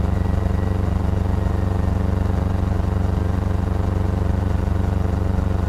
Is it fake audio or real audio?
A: real